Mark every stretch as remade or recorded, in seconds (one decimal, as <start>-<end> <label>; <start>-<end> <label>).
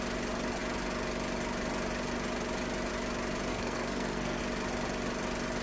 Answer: 0.0-3.5 recorded; 3.5-4.4 remade; 4.4-5.6 recorded